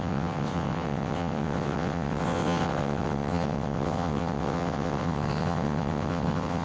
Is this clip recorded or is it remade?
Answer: remade